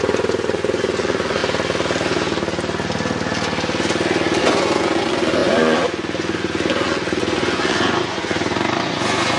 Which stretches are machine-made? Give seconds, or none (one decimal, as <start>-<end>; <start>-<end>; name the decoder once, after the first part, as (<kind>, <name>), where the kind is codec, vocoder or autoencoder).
0.0-1.4 (vocoder, Vocos); 4.4-9.4